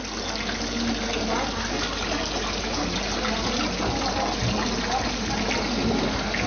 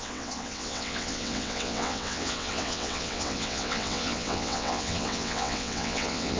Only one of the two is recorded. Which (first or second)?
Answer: first